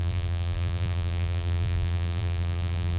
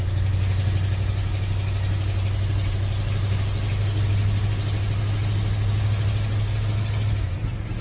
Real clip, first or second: second